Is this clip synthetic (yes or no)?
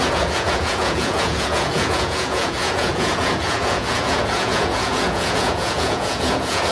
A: yes